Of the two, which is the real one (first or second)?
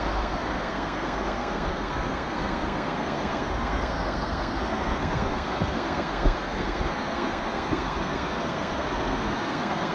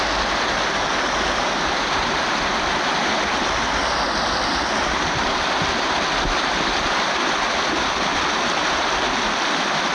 second